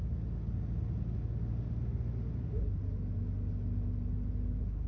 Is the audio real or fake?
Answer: real